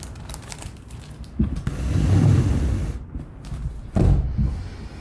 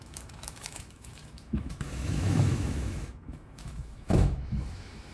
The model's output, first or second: second